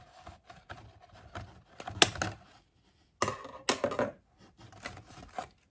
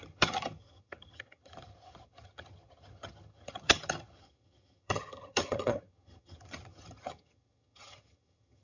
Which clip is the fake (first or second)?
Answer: second